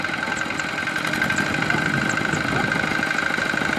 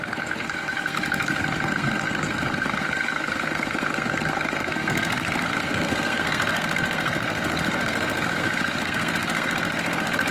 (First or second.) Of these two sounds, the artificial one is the second